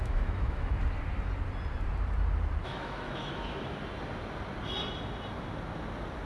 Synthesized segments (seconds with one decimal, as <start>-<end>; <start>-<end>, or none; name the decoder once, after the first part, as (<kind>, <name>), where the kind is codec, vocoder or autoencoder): 0.0-0.8 (autoencoder, DAC-VAE); 2.6-3.8